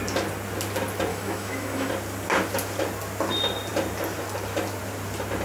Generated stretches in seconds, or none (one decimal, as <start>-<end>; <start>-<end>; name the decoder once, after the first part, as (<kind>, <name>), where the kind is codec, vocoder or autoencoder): 1.1-1.9 (autoencoder, DAC-VAE)